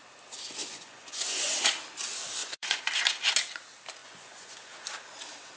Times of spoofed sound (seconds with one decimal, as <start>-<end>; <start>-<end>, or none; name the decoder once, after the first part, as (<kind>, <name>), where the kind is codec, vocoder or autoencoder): 0.6-1.5 (vocoder, Vocos); 2.4-2.9; 4.0-4.8